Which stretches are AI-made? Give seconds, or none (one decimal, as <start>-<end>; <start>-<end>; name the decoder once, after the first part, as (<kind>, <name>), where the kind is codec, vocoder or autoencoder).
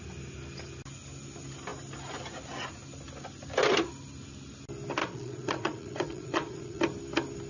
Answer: 5.0-6.8 (vocoder, Vocos)